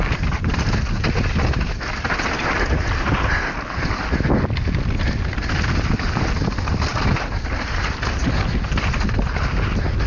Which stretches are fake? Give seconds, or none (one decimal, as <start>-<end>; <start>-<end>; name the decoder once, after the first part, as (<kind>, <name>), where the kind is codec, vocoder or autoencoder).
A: none